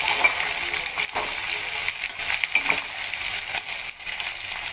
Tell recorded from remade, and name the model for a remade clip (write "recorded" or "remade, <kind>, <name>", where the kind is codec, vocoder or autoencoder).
recorded